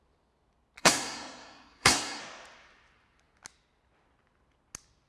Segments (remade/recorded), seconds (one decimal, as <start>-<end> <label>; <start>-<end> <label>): 0.0-0.8 recorded; 0.8-2.2 remade; 2.2-5.1 recorded